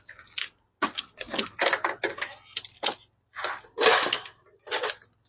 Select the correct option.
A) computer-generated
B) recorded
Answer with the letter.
B